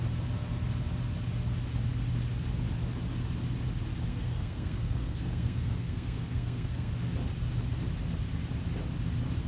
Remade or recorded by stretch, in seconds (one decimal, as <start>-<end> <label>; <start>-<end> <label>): 0.0-4.1 recorded; 4.1-6.9 remade; 6.9-9.5 recorded